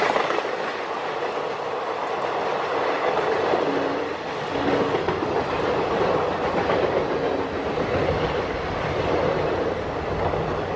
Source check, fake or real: real